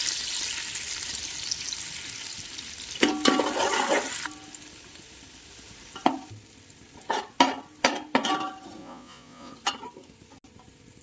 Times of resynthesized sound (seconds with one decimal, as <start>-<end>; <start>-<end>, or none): 8.8-9.5

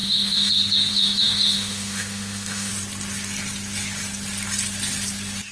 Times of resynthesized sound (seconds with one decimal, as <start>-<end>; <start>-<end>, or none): 0.0-0.5; 0.9-2.7